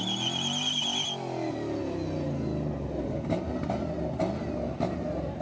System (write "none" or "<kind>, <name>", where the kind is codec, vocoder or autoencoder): none